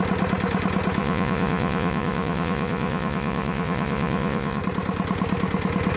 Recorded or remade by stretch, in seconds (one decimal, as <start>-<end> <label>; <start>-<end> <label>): 0.0-1.0 recorded; 1.0-4.6 remade; 4.6-6.0 recorded